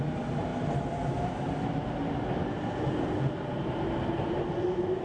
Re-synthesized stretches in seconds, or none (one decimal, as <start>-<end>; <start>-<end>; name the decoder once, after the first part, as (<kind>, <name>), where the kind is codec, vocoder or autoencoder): none